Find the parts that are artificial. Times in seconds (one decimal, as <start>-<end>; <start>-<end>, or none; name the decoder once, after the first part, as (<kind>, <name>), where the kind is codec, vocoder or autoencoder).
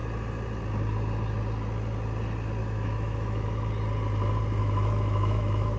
2.6-3.7 (autoencoder, DAC-VAE); 4.6-5.8